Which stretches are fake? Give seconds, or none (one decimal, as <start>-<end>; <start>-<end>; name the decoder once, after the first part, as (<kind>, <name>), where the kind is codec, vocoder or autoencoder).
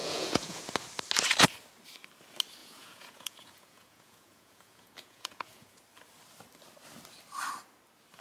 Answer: 0.0-0.6 (vocoder, Vocos); 2.6-5.8